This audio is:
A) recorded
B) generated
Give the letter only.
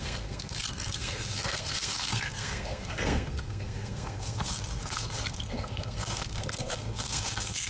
B